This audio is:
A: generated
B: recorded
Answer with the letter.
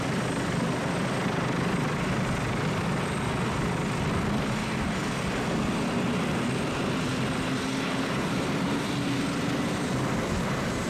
B